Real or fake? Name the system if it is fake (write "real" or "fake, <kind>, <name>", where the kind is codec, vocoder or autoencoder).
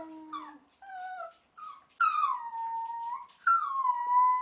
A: real